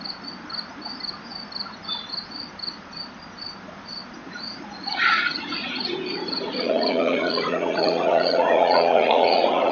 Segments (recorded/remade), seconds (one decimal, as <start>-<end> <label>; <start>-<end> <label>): 0.0-4.2 recorded; 4.2-9.7 remade

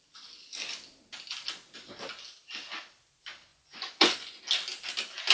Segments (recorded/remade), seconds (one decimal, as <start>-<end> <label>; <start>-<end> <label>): 0.0-3.5 recorded; 3.5-4.4 remade; 4.4-5.3 recorded

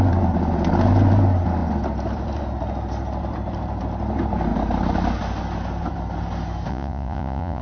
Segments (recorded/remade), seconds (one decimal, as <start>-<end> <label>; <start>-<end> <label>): 0.0-6.7 recorded; 6.7-7.6 remade